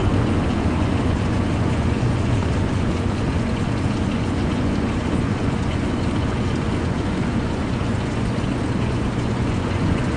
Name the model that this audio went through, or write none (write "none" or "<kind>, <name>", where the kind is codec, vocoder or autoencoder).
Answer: vocoder, Vocos